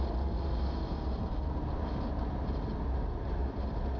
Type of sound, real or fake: real